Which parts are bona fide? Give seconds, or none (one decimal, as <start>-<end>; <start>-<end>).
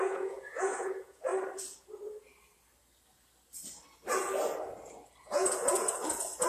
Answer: 1.3-5.2